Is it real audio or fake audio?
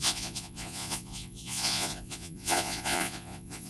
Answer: fake